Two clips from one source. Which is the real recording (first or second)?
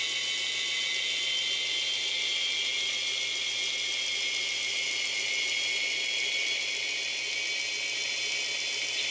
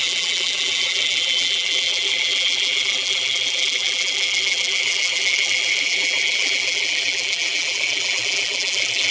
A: first